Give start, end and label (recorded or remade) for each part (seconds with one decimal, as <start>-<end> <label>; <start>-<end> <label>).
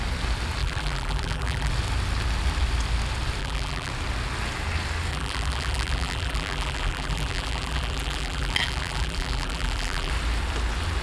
0.0-0.6 recorded; 0.6-1.7 remade; 1.7-3.4 recorded; 3.4-3.9 remade; 3.9-5.1 recorded; 5.1-10.1 remade; 10.1-11.0 recorded